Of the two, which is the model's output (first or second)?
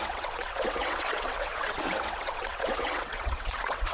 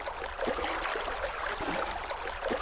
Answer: first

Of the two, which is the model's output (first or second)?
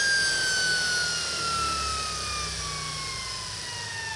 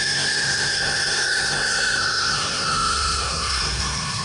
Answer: second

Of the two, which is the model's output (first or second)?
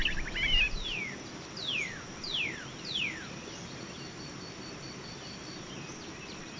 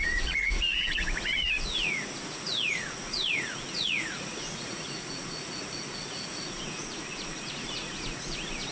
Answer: second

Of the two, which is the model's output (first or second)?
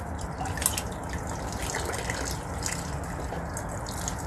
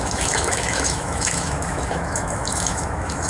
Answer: second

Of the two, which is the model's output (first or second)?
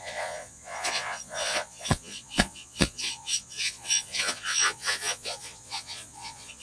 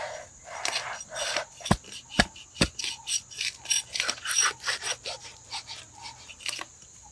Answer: first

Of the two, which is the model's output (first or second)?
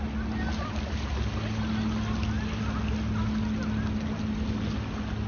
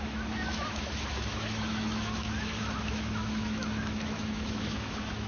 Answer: second